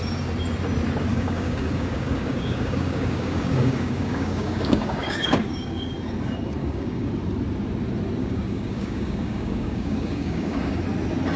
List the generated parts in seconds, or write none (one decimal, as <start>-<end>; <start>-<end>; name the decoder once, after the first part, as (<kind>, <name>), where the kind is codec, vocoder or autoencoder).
1.1-5.9 (codec, DAC); 6.6-7.1; 8.2-10.8